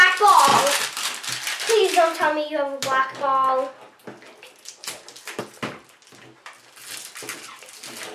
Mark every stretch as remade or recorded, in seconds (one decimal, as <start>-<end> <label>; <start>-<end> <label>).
0.0-8.1 recorded